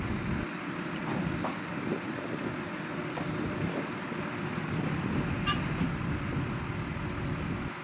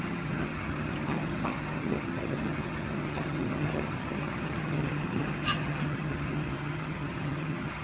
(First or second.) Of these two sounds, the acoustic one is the first